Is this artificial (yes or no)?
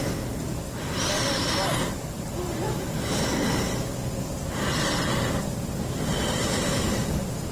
no